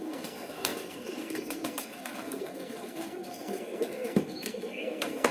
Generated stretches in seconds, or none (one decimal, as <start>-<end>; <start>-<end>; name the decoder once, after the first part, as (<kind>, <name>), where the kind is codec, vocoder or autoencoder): 0.0-5.3 (codec, SNAC)